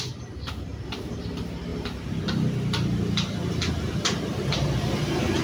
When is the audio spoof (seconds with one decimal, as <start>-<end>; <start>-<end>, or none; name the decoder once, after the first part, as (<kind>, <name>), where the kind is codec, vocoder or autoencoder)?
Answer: 0.7-1.2 (vocoder, BigVGAN v2)